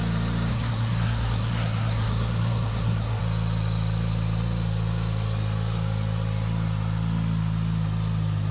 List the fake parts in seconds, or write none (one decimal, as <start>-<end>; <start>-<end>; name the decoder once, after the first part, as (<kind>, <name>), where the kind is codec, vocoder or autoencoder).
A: 0.5-3.2 (codec, SNAC)